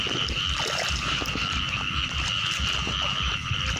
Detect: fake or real real